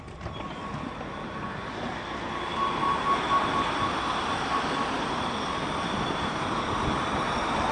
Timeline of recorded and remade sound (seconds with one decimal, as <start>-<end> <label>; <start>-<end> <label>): 0.0-7.7 recorded

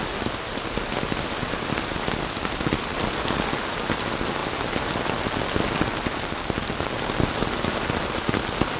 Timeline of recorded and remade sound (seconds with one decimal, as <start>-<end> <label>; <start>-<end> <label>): 0.0-8.8 recorded

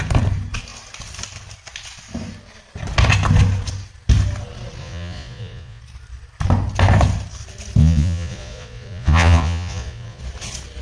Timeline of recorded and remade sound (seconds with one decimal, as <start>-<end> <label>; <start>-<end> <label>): 0.0-4.8 recorded; 4.8-5.8 remade; 5.8-7.8 recorded; 7.8-10.2 remade; 10.2-10.8 recorded

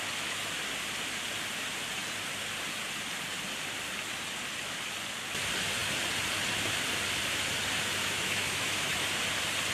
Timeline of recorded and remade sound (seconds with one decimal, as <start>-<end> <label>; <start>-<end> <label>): 0.0-8.0 recorded; 8.0-9.2 remade; 9.2-9.7 recorded

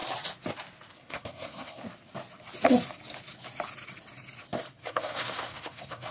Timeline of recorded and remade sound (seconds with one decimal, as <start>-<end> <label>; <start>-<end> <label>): 0.0-1.0 recorded; 1.0-1.8 remade; 1.8-4.8 recorded; 4.8-6.1 remade

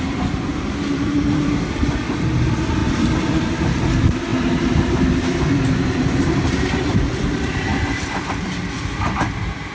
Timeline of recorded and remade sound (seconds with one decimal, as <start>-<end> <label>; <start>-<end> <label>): 0.0-9.7 remade